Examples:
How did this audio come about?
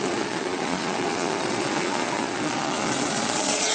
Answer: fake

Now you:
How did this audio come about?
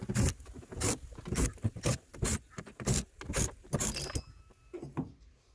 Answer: real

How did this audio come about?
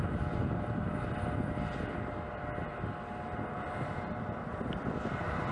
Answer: real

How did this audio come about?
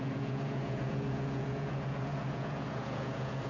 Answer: fake